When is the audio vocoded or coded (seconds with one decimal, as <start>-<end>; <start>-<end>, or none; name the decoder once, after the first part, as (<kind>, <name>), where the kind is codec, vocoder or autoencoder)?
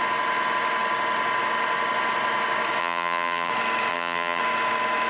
2.8-3.5 (vocoder, BigVGAN v2); 3.9-4.4